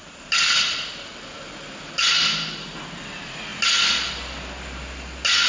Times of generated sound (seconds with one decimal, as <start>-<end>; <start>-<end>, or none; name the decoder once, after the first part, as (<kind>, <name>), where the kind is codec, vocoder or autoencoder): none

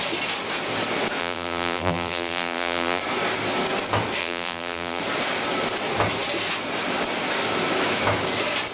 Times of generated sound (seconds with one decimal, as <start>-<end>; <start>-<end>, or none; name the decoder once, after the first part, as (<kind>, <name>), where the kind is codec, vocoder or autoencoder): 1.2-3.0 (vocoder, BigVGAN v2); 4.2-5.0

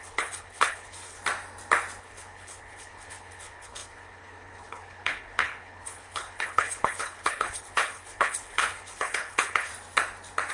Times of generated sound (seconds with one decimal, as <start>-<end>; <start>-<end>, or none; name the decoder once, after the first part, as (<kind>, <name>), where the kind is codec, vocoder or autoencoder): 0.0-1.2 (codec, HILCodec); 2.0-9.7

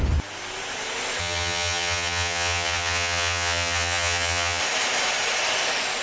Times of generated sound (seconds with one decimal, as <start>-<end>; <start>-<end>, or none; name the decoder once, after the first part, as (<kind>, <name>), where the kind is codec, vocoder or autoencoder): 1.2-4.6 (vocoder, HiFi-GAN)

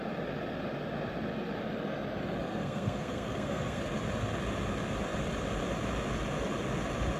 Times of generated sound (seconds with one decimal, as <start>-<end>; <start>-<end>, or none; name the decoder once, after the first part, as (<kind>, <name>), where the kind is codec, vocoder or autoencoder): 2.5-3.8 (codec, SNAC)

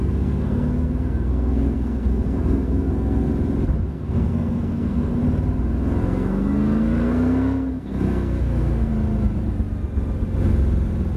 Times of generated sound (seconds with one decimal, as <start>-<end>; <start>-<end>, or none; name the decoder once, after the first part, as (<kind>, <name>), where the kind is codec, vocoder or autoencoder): 0.0-3.3 (codec, SNAC); 3.9-5.2; 6.0-8.9